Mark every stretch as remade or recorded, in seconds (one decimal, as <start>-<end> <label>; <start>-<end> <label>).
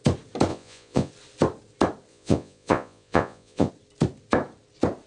0.0-0.5 recorded; 0.5-1.1 remade; 1.1-2.1 recorded; 2.1-3.7 remade; 3.7-5.1 recorded